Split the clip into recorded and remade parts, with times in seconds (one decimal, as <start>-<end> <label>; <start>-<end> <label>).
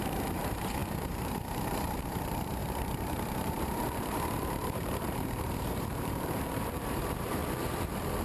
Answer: 0.0-7.4 remade; 7.4-8.2 recorded